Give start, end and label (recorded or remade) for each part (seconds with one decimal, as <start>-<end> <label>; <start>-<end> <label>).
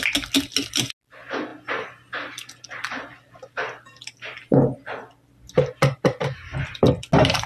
0.0-7.5 recorded